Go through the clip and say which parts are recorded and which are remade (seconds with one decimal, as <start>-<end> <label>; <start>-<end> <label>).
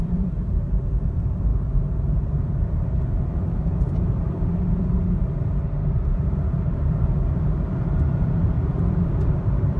0.0-9.8 remade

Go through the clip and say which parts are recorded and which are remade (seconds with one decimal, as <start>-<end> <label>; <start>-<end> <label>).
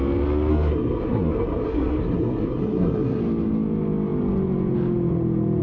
0.0-0.5 recorded; 0.5-3.2 remade; 3.2-5.6 recorded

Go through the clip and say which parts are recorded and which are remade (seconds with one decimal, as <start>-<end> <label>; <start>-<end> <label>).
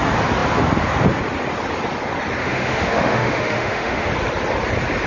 0.0-2.4 recorded; 2.4-4.1 remade; 4.1-5.1 recorded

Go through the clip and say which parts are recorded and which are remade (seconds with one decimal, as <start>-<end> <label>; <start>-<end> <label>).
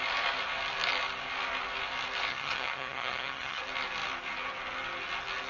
0.0-2.3 recorded; 2.3-3.6 remade; 3.6-5.5 recorded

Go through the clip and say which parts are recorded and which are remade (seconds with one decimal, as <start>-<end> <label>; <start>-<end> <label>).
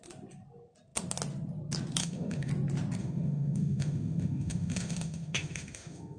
0.0-2.0 recorded; 2.0-2.5 remade; 2.5-3.0 recorded; 3.0-6.2 remade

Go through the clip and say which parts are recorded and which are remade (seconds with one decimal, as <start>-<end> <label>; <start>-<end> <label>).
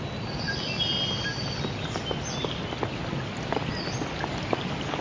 0.0-5.0 recorded